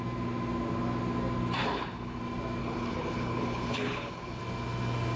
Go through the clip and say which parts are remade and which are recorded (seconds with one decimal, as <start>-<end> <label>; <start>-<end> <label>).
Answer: 0.0-1.6 recorded; 1.6-2.2 remade; 2.2-2.6 recorded; 2.6-4.4 remade; 4.4-5.2 recorded

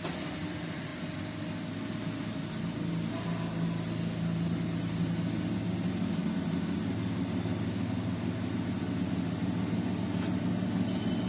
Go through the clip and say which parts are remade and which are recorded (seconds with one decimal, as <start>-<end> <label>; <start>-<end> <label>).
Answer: 0.0-11.3 recorded

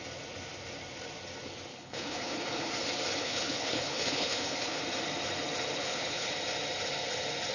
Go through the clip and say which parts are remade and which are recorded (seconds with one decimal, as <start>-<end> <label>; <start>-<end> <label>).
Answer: 0.0-1.7 recorded; 1.7-2.7 remade; 2.7-3.2 recorded; 3.2-4.8 remade; 4.8-5.8 recorded; 5.8-6.3 remade; 6.3-7.5 recorded

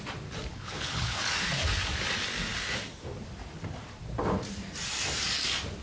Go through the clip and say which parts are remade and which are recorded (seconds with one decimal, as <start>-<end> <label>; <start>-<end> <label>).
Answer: 0.0-0.5 recorded; 0.5-1.2 remade; 1.2-5.8 recorded

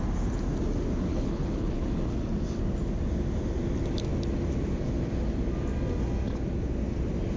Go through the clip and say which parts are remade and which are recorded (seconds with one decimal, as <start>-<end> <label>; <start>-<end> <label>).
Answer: 0.0-1.1 recorded; 1.1-2.0 remade; 2.0-7.4 recorded

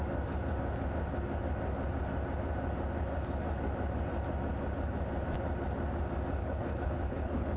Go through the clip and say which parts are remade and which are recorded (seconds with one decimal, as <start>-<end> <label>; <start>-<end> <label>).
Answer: 0.0-6.4 recorded; 6.4-7.6 remade

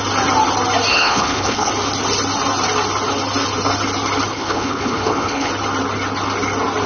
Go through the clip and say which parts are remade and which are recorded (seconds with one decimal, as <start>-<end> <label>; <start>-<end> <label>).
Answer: 0.0-0.9 recorded; 0.9-1.7 remade; 1.7-4.3 recorded; 4.3-5.5 remade; 5.5-6.9 recorded

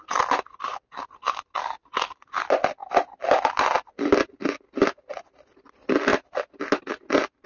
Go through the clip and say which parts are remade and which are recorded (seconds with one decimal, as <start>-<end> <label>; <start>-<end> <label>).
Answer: 0.0-7.5 recorded